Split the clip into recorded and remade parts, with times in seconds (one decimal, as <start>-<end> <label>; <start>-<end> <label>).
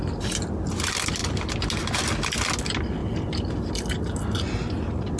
0.0-5.2 recorded